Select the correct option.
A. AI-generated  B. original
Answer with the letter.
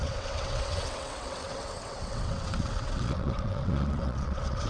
A